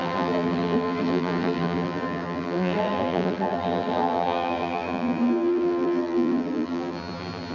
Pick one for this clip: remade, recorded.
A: remade